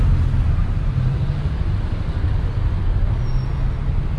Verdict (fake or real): real